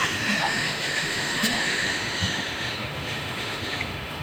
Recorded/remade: remade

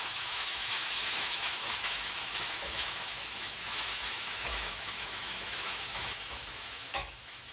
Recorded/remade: remade